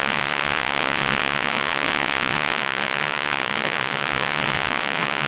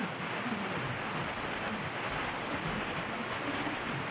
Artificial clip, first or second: first